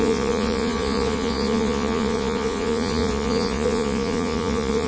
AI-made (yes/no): yes